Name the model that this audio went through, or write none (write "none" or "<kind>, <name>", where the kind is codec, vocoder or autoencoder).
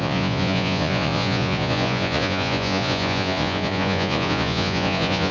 vocoder, Vocos